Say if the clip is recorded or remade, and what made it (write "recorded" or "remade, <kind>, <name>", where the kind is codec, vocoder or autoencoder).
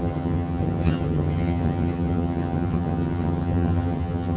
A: remade, vocoder, HiFi-GAN